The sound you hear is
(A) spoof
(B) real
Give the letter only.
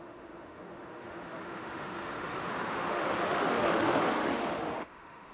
A